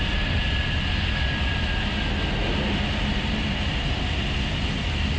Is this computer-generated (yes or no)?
no